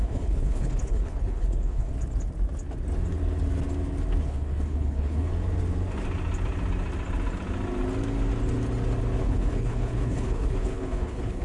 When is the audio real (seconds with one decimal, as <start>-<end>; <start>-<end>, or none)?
1.9-4.2; 5.3-9.2

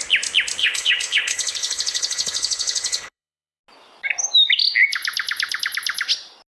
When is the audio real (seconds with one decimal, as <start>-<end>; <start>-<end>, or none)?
0.0-0.6; 3.6-6.5

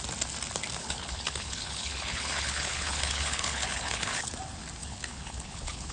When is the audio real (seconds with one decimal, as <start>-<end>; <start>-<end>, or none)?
0.0-0.8; 4.3-4.8

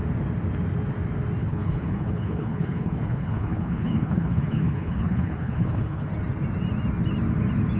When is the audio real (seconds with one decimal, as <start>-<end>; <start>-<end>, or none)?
0.0-1.4; 6.1-7.8

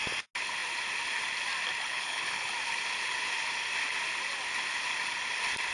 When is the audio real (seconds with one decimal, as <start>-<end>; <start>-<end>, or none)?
0.0-1.8; 2.5-5.7

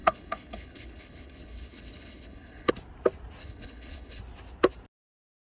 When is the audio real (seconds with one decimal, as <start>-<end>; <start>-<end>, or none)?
2.7-3.4; 4.2-5.5

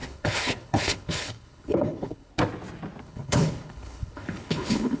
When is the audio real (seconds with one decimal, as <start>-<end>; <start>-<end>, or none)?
2.3-3.0

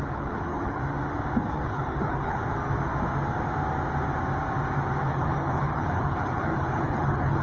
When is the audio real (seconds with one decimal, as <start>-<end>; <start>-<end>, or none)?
0.8-1.5; 2.4-5.0